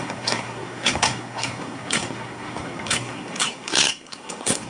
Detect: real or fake fake